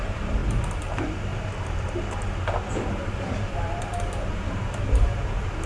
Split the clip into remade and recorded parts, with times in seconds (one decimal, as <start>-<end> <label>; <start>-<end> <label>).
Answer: 0.0-1.3 remade; 1.3-2.7 recorded; 2.7-5.7 remade